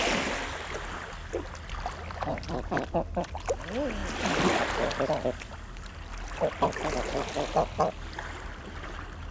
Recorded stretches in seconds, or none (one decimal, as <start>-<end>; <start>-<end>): 0.0-2.3; 3.5-9.3